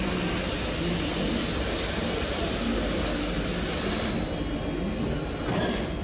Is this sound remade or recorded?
recorded